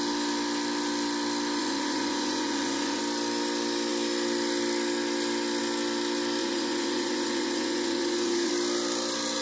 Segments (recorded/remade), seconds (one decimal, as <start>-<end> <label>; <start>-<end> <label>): 0.0-1.6 recorded; 1.6-3.0 remade; 3.0-6.4 recorded; 6.4-8.5 remade; 8.5-9.4 recorded